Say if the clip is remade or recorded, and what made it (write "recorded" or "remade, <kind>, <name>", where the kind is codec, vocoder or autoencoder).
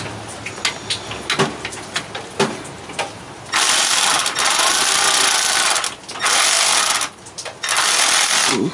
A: recorded